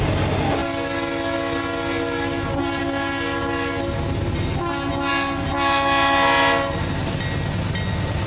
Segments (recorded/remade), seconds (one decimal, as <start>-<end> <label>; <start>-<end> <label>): 0.0-8.3 recorded